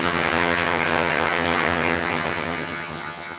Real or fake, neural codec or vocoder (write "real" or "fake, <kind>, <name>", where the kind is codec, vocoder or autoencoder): fake, vocoder, HiFi-GAN